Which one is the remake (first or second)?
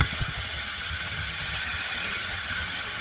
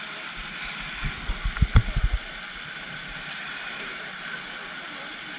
first